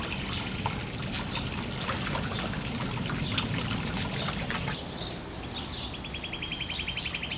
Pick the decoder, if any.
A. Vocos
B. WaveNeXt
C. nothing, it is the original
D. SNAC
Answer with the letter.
C